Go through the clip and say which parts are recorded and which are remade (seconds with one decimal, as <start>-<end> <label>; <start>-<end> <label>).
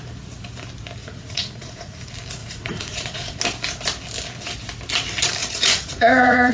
0.0-1.0 recorded; 1.0-2.0 remade; 2.0-2.4 recorded; 2.4-3.4 remade; 3.4-5.4 recorded; 5.4-6.5 remade